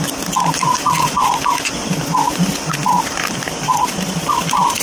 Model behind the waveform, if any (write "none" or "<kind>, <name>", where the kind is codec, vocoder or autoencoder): vocoder, BigVGAN v2